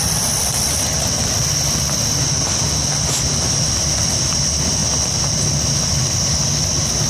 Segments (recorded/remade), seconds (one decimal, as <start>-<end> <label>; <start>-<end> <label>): 0.0-7.1 recorded